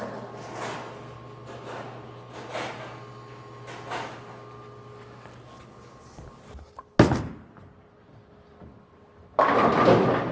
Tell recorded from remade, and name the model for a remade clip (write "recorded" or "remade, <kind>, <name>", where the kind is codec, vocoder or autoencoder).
recorded